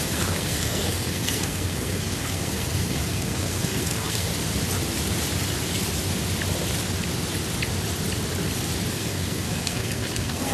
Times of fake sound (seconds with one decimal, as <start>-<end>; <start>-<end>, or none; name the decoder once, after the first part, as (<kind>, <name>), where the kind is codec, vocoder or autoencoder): 0.0-4.3 (codec, SNAC); 8.9-10.5